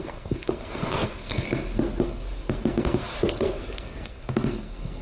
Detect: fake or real fake